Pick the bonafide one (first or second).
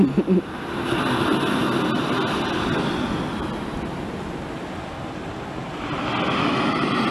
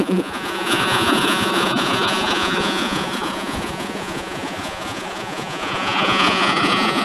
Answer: first